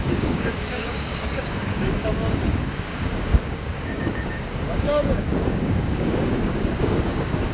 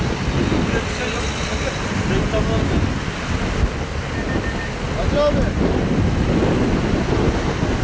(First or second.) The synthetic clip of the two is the first